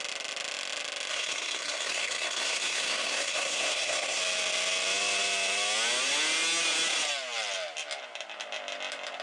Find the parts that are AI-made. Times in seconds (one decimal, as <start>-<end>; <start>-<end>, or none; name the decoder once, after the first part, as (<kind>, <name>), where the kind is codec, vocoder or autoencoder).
1.1-4.2 (codec, SNAC)